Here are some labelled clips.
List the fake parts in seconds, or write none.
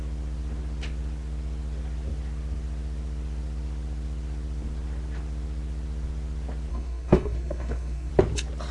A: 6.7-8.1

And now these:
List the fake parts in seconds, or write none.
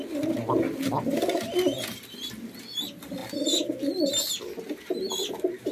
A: none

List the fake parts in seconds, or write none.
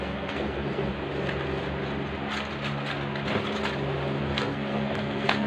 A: 0.0-0.9; 4.2-5.5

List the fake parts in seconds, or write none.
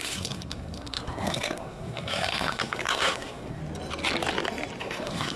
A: 0.0-3.6; 4.8-5.4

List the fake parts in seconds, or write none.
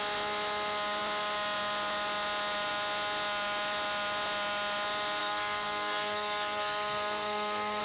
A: 5.2-7.8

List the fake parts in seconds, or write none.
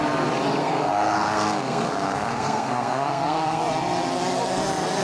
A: 0.6-3.6